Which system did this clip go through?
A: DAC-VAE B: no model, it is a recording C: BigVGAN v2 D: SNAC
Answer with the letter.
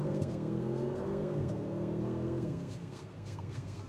D